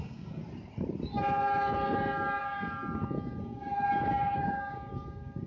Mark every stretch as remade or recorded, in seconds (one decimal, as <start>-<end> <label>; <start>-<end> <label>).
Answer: 0.0-0.4 remade; 0.4-2.4 recorded; 2.4-2.8 remade; 2.8-3.4 recorded; 3.4-5.5 remade